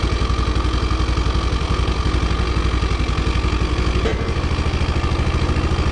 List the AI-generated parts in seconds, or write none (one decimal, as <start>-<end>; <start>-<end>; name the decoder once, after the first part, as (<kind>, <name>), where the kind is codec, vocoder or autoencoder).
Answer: none